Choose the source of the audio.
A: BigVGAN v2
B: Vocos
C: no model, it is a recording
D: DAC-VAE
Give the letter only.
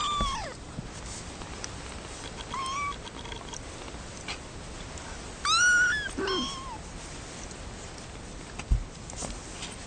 C